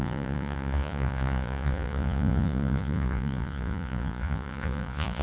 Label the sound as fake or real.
fake